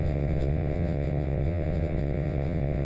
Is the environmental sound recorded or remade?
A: remade